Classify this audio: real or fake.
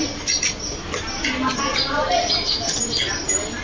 real